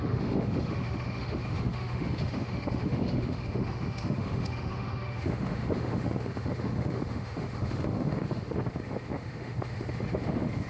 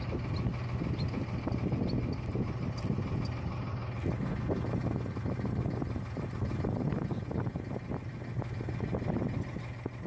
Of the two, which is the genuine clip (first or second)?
second